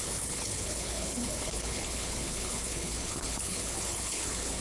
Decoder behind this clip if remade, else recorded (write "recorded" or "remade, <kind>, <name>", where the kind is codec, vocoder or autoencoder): remade, codec, HILCodec